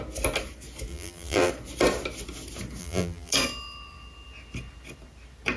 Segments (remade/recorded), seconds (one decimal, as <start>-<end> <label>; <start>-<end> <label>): 0.0-0.9 recorded; 0.9-1.5 remade; 1.5-2.8 recorded; 2.8-3.3 remade; 3.3-5.6 recorded